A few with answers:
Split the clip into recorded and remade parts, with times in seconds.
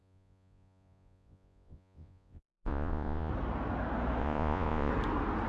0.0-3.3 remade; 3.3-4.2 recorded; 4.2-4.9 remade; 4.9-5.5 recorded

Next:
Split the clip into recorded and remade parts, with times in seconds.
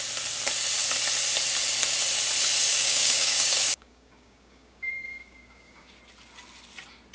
0.0-2.7 recorded; 2.7-5.9 remade; 5.9-7.1 recorded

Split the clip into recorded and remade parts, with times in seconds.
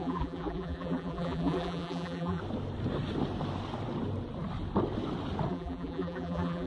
0.0-2.4 remade; 2.4-5.5 recorded; 5.5-6.7 remade